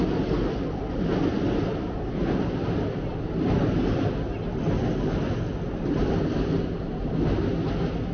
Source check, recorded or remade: recorded